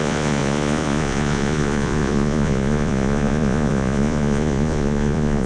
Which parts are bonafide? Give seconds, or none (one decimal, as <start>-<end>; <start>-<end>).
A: none